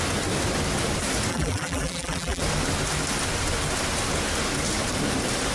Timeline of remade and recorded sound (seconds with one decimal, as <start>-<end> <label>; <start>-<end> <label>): 0.0-1.3 recorded; 1.3-2.4 remade; 2.4-5.5 recorded